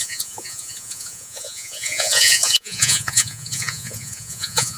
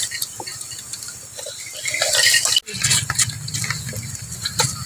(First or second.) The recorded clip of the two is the second